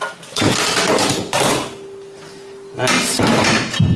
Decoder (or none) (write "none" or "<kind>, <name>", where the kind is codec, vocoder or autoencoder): none